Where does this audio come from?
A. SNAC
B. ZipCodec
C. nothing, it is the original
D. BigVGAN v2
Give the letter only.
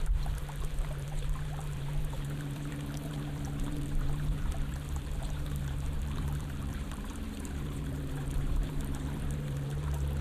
D